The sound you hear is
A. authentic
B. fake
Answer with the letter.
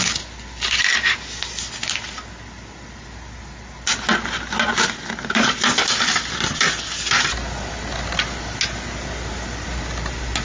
A